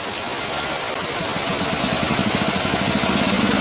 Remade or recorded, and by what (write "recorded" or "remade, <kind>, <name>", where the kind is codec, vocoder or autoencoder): recorded